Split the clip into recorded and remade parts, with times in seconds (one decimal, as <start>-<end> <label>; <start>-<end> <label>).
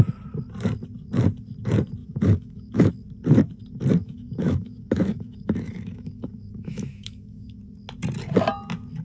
0.0-2.0 recorded; 2.0-2.9 remade; 2.9-4.0 recorded; 4.0-7.6 remade; 7.6-9.0 recorded